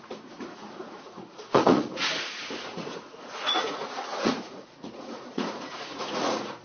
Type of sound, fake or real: fake